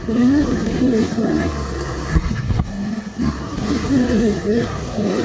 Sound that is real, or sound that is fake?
fake